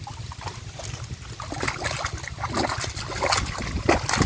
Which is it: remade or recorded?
recorded